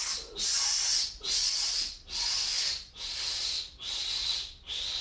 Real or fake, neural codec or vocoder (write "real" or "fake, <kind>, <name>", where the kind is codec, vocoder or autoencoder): real